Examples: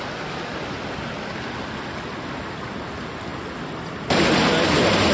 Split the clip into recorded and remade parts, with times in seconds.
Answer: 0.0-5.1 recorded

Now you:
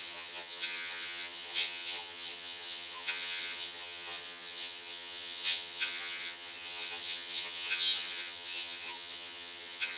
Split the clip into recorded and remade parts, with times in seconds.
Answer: 0.0-10.0 remade